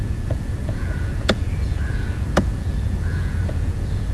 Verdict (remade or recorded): remade